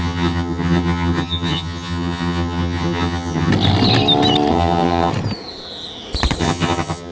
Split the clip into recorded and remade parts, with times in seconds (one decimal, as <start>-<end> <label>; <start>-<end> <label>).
0.0-3.5 remade; 3.5-4.5 recorded; 4.5-5.1 remade; 5.1-6.4 recorded; 6.4-7.1 remade